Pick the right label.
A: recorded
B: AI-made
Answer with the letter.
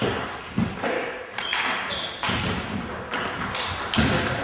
A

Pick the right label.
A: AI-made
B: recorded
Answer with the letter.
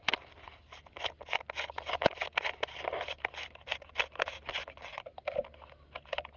B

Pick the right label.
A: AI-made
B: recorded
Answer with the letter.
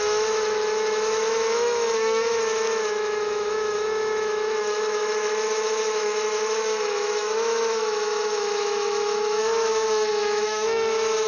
A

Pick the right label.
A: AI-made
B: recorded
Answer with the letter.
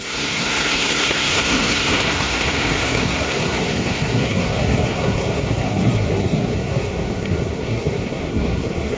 A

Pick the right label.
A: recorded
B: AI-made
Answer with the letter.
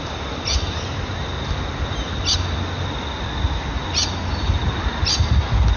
A